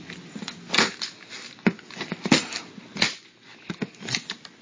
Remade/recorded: recorded